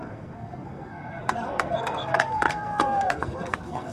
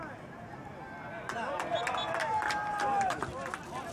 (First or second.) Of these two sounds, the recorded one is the second